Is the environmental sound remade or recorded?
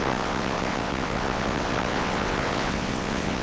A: remade